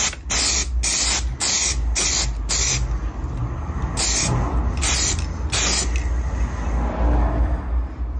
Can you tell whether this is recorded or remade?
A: recorded